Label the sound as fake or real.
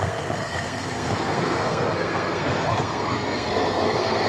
fake